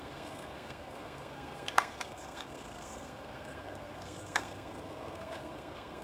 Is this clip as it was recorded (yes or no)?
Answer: no